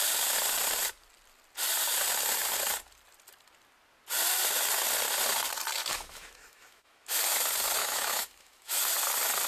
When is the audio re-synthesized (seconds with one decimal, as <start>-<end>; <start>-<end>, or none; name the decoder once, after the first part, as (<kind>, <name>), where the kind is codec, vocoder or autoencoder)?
5.8-7.2 (autoencoder, DAC-VAE); 7.8-8.8